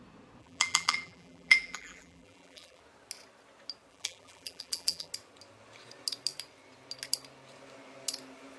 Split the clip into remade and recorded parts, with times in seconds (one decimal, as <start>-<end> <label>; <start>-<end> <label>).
0.0-0.4 recorded; 0.4-2.8 remade; 2.8-3.9 recorded; 3.9-5.1 remade; 5.1-8.6 recorded

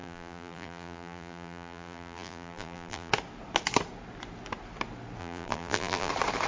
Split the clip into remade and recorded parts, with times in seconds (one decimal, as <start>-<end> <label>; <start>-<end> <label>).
0.0-3.1 remade; 3.1-5.2 recorded; 5.2-6.1 remade; 6.1-6.5 recorded

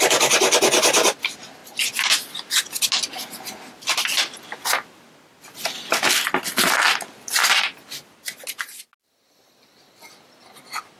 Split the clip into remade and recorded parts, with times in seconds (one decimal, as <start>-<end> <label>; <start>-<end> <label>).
0.0-11.0 recorded